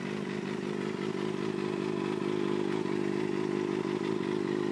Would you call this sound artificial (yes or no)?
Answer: no